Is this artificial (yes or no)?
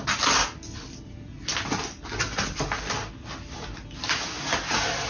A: no